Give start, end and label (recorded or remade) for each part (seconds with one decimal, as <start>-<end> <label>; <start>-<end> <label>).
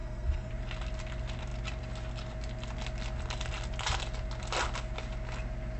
0.0-0.5 remade; 0.5-5.8 recorded